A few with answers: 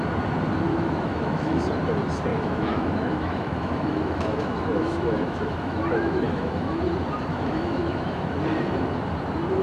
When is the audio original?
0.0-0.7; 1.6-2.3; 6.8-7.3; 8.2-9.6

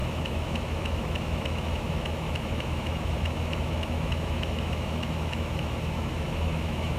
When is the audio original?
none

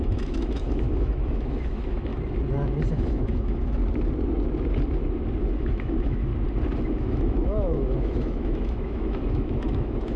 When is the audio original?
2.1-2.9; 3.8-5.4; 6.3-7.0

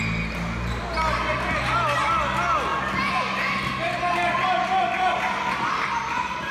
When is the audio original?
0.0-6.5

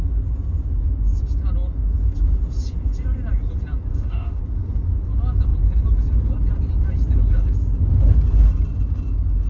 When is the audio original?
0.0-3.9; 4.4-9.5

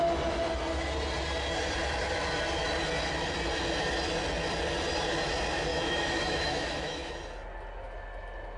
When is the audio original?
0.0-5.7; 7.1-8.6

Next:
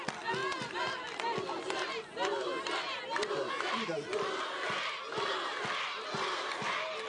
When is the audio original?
0.0-7.1

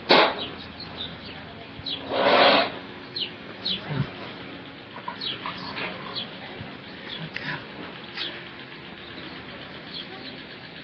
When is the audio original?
0.0-2.8; 3.6-10.8